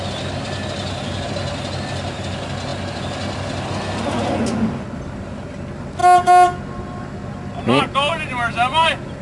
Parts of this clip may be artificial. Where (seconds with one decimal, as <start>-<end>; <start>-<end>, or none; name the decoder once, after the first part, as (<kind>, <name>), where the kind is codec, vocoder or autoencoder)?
none